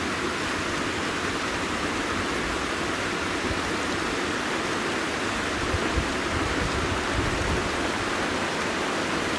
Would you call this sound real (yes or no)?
yes